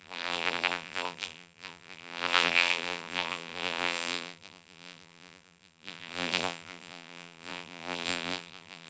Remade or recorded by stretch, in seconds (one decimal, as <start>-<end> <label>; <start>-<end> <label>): 0.0-8.9 remade